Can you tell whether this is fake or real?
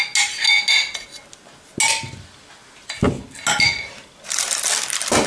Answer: real